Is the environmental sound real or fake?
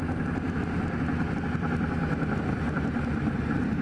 real